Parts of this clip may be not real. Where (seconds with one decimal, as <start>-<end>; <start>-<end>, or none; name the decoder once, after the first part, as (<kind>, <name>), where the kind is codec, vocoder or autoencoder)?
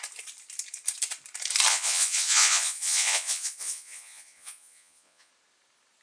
1.7-5.3 (vocoder, Vocos)